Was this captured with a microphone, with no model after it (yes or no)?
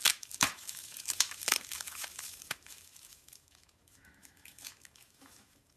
no